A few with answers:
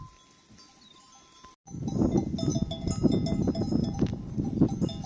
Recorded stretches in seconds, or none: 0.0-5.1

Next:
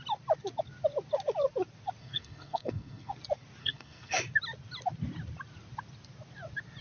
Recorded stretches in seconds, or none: 0.0-2.0; 3.1-3.6; 4.2-6.8

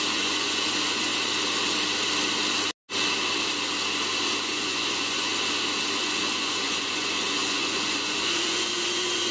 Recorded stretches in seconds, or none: 1.1-4.4; 5.3-6.0

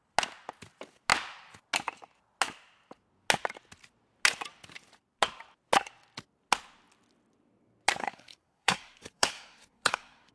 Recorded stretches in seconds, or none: 0.0-8.0

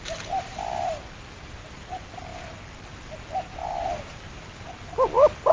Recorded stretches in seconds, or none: 0.0-3.6; 4.7-5.5

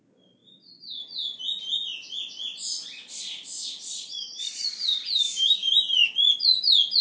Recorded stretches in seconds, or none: 0.0-3.9; 5.1-7.0

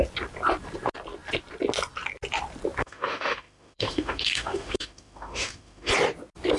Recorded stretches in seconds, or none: 0.0-2.8; 5.9-6.6